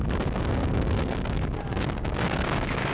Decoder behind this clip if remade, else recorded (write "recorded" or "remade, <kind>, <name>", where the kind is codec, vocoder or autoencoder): remade, codec, DAC